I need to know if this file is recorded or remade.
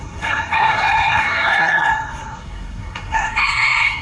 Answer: remade